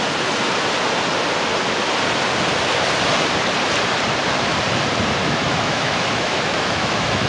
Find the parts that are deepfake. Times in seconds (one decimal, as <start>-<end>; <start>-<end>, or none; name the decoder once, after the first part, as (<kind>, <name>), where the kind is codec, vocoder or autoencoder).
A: 5.2-7.3 (autoencoder, DAC-VAE)